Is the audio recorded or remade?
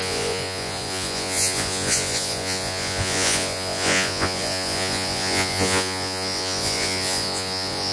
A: remade